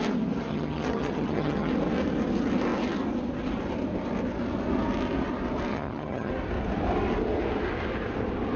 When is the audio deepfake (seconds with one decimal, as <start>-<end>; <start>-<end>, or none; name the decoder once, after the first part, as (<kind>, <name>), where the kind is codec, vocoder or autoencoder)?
0.5-1.7 (vocoder, HiFi-GAN); 5.7-6.3